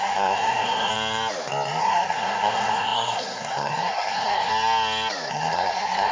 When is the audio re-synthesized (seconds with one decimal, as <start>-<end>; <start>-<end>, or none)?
0.0-0.9; 1.8-4.5; 5.3-6.1